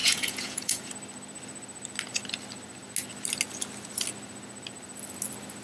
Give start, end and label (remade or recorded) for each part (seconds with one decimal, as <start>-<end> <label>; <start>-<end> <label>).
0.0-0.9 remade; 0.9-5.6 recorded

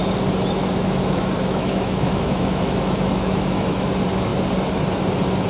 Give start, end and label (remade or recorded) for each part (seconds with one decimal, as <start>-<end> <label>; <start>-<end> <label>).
0.0-0.6 recorded; 0.6-3.9 remade; 3.9-5.5 recorded

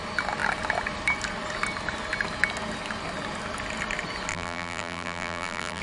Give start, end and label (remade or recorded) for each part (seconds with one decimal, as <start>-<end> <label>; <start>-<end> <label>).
0.0-4.3 recorded; 4.3-5.8 remade

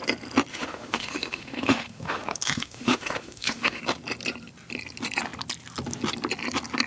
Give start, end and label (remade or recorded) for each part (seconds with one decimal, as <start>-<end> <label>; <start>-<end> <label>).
0.0-0.5 recorded; 0.5-3.8 remade; 3.8-6.9 recorded